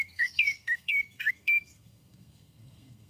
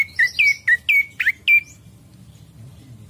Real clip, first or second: second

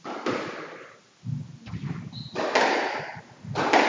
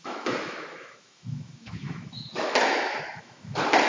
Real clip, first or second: first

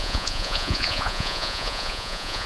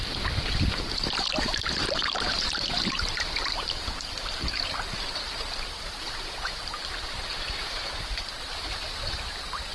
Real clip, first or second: second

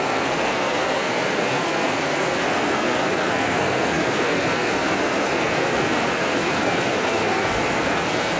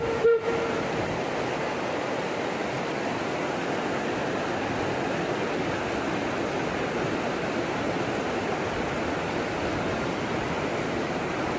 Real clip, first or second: second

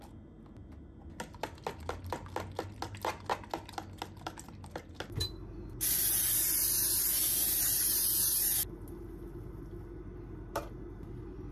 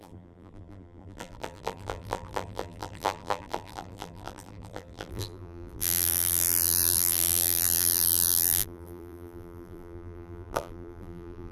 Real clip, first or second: first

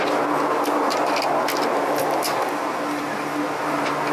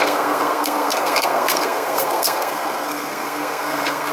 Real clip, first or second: first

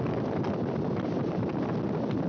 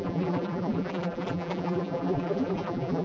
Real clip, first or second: first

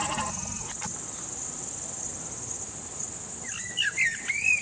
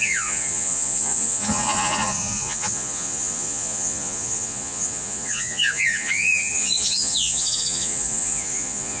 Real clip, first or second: first